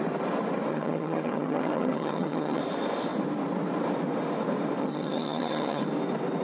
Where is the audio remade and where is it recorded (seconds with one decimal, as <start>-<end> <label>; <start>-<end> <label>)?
0.0-0.7 recorded; 0.7-2.6 remade; 2.6-4.8 recorded; 4.8-5.8 remade; 5.8-6.4 recorded